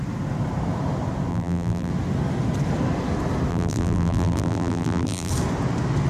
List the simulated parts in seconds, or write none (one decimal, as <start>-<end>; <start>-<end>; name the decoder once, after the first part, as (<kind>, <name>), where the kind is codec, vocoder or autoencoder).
1.3-1.9 (vocoder, BigVGAN v2); 3.5-5.3